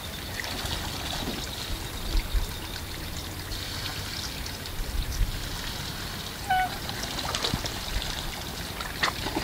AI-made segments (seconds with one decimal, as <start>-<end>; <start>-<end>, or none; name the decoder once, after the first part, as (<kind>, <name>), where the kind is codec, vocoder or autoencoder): none